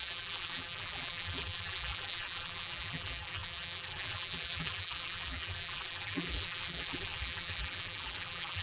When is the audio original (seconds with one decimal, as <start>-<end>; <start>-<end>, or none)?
none